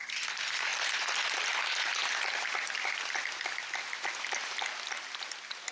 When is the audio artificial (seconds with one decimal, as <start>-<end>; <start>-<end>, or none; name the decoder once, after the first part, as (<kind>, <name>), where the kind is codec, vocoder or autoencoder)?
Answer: none